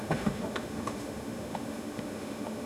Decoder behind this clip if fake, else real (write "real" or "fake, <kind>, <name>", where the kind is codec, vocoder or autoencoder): fake, autoencoder, DAC-VAE